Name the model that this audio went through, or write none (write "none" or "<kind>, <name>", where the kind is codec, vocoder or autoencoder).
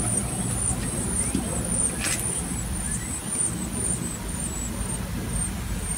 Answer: none